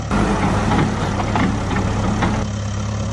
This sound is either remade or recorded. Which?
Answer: recorded